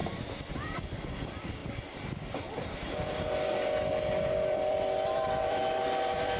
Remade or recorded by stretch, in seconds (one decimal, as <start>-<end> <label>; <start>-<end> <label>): 0.0-0.5 recorded; 0.5-1.6 remade; 1.6-2.6 recorded; 2.6-6.4 remade